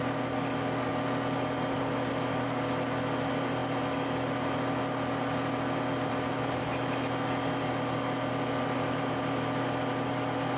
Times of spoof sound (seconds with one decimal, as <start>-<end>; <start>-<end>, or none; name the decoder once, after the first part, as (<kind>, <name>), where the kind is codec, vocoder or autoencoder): none